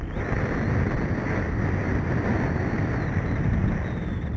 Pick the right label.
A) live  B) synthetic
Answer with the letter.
A